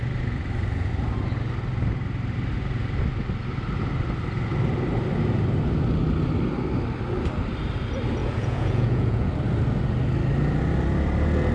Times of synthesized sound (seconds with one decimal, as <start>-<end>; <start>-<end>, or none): 8.2-9.3